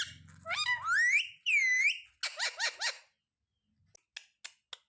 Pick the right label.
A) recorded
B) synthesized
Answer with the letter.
A